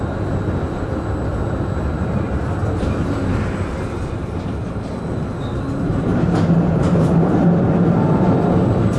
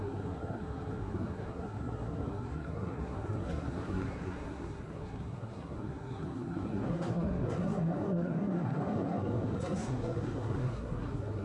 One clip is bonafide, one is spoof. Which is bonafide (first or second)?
first